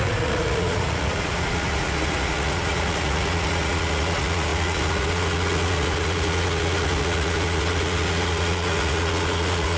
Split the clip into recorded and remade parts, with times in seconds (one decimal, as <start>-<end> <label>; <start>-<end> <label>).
0.0-9.8 remade